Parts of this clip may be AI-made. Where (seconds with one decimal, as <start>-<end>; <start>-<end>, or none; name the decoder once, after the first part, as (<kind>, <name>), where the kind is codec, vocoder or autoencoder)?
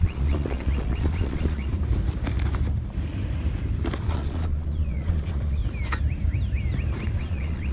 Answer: 0.0-1.7 (vocoder, Vocos); 4.1-5.6; 7.2-7.7